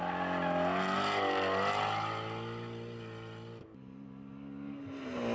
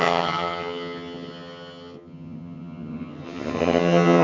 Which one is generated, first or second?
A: second